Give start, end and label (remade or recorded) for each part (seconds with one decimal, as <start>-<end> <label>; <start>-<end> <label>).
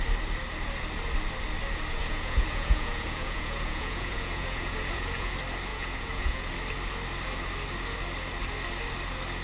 0.0-2.0 recorded; 2.0-5.3 remade; 5.3-5.7 recorded; 5.7-6.5 remade; 6.5-9.4 recorded